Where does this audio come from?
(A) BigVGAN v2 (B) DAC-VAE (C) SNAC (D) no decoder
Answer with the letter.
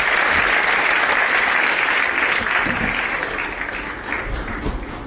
D